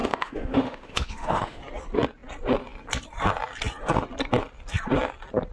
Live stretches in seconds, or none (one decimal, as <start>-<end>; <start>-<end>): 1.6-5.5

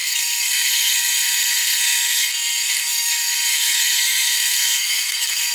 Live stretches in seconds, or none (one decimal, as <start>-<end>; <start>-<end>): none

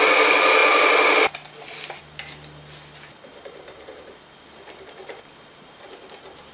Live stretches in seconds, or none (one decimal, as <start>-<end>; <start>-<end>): 0.0-6.5